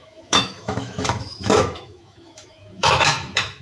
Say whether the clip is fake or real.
fake